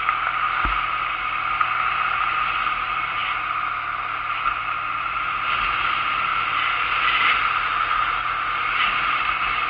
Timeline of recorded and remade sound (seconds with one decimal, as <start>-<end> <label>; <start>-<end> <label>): 0.0-9.7 recorded